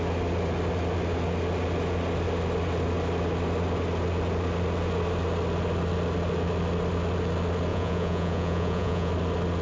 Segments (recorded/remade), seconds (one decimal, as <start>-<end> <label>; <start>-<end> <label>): 0.0-7.7 recorded; 7.7-9.1 remade; 9.1-9.6 recorded